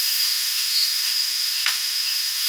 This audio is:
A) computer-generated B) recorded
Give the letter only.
A